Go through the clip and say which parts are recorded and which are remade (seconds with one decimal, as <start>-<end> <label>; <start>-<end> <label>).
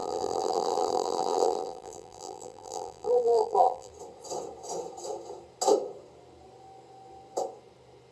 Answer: 0.0-3.9 remade; 3.9-8.1 recorded